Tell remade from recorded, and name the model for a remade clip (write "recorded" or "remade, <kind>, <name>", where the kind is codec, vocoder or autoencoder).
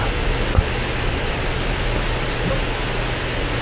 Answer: recorded